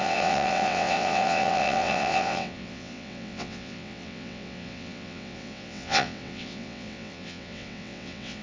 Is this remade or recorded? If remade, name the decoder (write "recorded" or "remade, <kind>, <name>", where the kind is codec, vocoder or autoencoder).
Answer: remade, vocoder, WaveNeXt